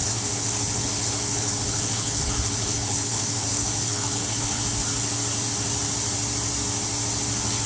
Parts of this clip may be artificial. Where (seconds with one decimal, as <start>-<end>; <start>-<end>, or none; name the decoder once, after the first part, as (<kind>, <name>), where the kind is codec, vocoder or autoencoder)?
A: 0.0-4.6 (codec, HILCodec)

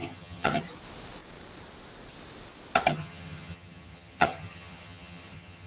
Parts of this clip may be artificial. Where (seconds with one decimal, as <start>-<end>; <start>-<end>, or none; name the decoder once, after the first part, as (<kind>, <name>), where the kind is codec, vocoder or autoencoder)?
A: 0.0-0.6 (vocoder, HiFi-GAN); 2.9-5.7